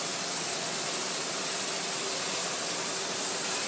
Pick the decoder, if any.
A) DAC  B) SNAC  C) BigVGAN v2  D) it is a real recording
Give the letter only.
C